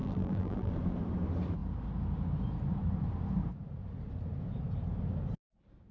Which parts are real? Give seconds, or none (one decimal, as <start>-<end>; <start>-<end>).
0.7-5.9